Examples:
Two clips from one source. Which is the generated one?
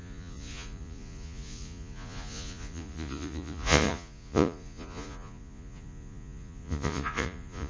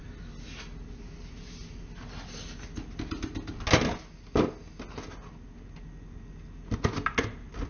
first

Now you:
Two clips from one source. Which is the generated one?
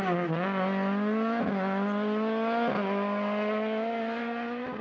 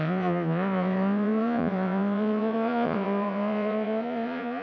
second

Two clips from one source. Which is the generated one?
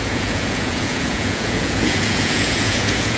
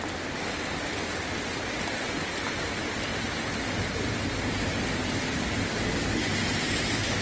first